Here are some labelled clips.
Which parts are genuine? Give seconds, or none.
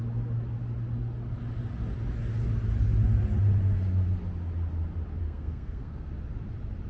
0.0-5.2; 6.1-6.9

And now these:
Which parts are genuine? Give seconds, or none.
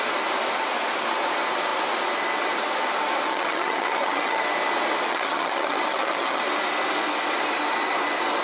0.0-3.3; 4.4-5.1; 6.4-8.4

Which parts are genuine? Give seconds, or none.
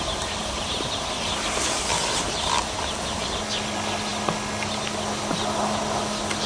0.0-6.5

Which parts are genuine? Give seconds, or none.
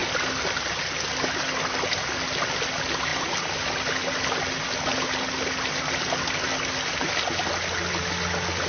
0.0-8.7